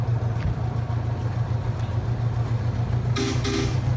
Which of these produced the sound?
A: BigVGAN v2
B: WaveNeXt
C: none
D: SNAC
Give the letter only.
C